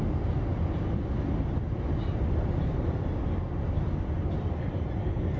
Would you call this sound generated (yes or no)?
no